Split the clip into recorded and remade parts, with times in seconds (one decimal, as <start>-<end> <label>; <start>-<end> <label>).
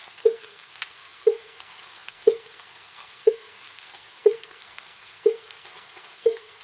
0.0-6.6 remade